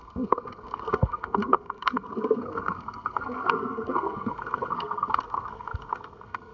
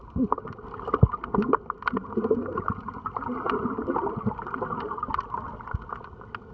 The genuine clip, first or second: second